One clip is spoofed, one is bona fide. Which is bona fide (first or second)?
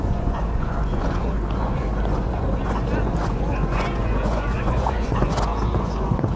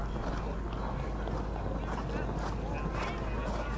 second